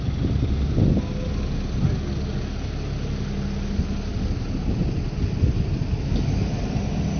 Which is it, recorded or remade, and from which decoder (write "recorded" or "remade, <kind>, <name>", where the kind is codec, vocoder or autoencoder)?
recorded